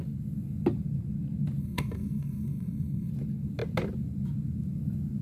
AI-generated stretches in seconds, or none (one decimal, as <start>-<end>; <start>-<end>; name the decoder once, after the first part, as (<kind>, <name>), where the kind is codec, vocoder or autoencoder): 1.6-3.1 (codec, SNAC)